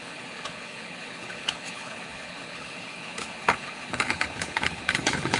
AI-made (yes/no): yes